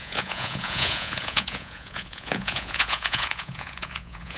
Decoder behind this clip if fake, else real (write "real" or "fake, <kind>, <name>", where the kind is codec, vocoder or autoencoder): fake, vocoder, Vocos